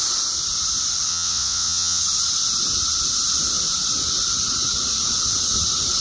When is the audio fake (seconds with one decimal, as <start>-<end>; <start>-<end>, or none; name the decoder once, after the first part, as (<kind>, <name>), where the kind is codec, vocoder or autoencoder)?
1.1-2.0 (vocoder, WaveNeXt)